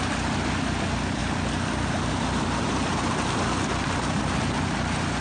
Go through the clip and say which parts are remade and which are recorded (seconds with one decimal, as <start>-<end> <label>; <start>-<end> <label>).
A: 0.0-5.2 recorded